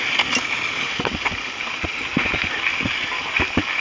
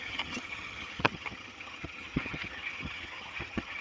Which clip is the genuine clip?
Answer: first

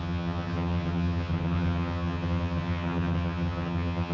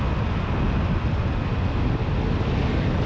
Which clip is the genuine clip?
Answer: second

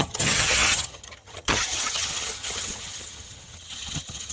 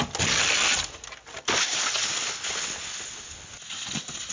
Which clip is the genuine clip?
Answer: second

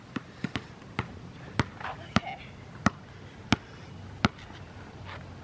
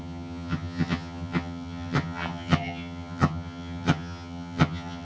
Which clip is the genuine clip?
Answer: first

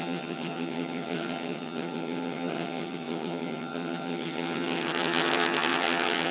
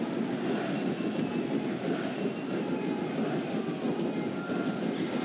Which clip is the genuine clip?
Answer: second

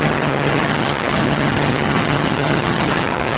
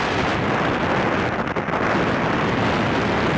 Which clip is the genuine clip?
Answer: second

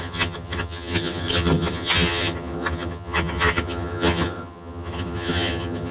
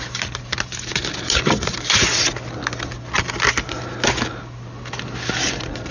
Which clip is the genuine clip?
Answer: second